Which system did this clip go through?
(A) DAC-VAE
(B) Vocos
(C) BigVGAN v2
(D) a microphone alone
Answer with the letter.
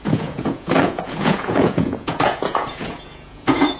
B